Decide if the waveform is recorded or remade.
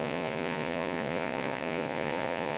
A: remade